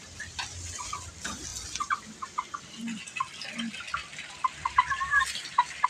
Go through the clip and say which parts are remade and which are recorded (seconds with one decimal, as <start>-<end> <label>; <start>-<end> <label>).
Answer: 0.0-1.5 remade; 1.5-3.5 recorded; 3.5-5.9 remade